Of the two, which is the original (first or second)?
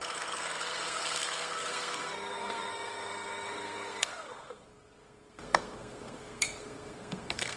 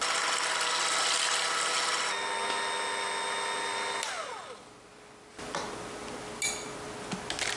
second